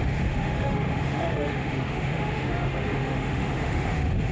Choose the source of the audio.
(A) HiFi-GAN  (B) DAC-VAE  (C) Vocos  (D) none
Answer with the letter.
B